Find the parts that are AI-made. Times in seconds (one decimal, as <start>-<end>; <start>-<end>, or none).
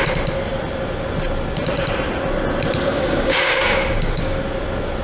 2.9-4.4